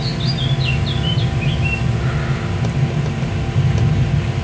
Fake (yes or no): no